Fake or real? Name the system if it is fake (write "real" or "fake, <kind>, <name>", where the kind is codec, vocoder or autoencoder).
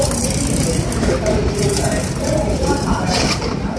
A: real